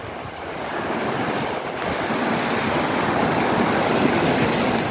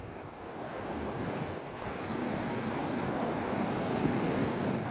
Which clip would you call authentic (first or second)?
first